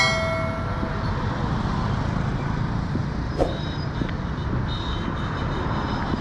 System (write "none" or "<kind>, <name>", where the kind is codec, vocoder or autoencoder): none